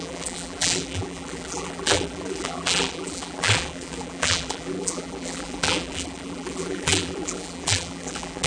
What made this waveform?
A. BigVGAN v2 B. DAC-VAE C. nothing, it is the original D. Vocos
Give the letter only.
A